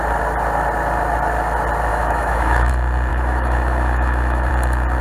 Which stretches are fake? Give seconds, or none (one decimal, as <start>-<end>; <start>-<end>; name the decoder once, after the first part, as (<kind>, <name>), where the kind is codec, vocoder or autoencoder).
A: 1.9-2.7 (autoencoder, DAC-VAE); 3.1-4.5